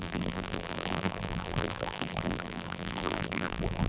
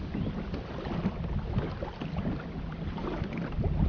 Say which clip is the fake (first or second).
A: first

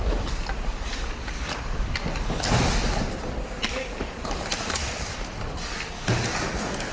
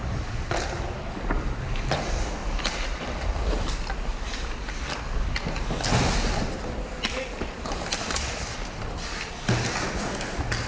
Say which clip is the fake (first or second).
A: first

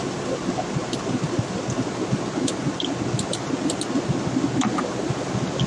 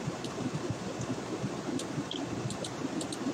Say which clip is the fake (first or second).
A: second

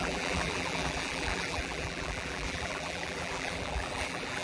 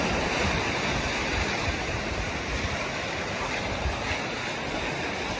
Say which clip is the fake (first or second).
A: first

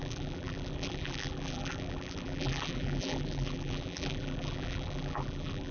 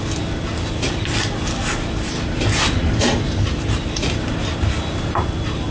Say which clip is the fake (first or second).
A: first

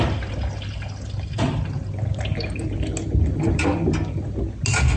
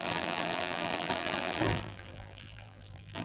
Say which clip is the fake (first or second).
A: second